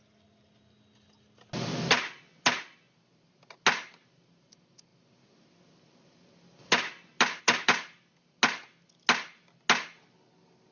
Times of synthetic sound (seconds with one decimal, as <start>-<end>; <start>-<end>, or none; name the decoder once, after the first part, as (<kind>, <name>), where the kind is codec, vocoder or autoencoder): none